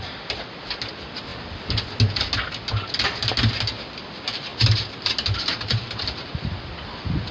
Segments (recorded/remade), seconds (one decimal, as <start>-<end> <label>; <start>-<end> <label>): 0.0-4.5 recorded; 4.5-5.9 remade; 5.9-7.3 recorded